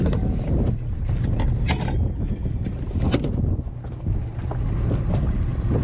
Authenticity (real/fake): real